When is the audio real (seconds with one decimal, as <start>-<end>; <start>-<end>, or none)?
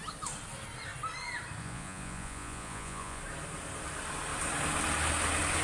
0.0-1.6; 3.2-5.6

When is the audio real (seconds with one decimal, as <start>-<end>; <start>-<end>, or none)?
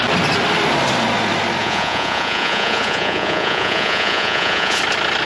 0.0-1.6; 4.8-5.3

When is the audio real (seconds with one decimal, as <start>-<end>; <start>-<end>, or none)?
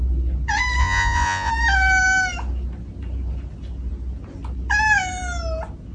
0.0-0.8; 1.5-5.9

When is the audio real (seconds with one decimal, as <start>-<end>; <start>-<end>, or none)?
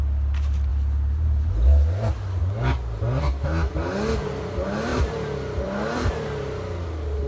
0.0-3.2; 3.7-7.3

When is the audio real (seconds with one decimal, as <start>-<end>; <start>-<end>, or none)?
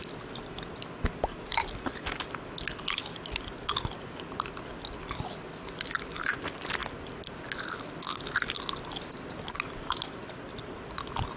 0.0-11.4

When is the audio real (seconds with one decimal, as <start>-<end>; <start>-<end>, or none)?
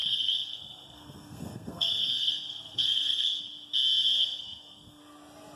3.4-4.2; 5.0-5.6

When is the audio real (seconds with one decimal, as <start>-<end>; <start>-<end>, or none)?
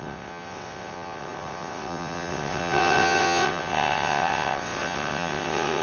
none